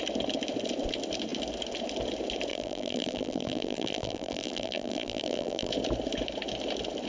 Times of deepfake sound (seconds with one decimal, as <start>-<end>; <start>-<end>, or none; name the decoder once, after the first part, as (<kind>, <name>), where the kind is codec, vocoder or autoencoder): 2.5-5.7 (vocoder, BigVGAN v2)